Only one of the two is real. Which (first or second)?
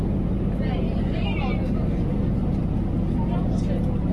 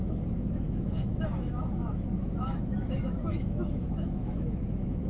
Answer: first